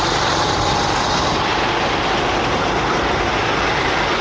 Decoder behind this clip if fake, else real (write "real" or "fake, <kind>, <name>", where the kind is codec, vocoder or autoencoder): real